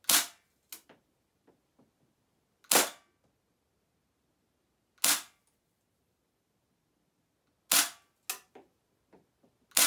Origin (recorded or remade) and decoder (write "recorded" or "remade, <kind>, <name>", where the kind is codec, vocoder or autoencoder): recorded